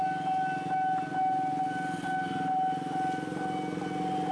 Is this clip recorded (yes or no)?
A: yes